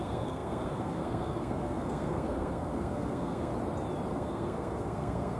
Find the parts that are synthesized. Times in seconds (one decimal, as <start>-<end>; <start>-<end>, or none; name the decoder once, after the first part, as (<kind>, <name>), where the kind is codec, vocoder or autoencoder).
0.0-3.5 (codec, SNAC); 4.1-5.4